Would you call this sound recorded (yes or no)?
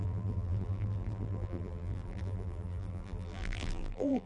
no